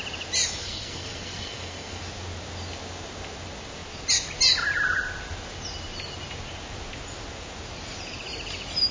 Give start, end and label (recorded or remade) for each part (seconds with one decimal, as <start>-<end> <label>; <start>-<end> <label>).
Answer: 0.0-0.6 recorded; 0.6-2.0 remade; 2.0-8.9 recorded